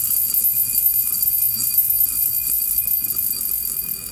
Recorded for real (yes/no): no